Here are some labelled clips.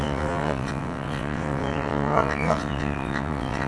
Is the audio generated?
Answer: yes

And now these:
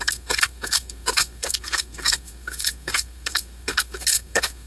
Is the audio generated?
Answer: yes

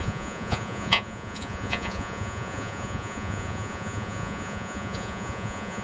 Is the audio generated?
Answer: yes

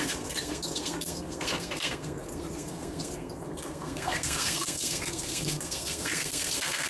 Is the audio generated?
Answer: yes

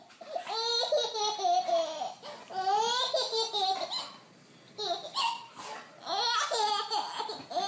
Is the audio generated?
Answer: no